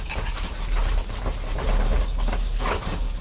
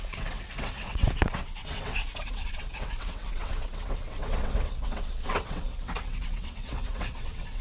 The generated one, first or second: second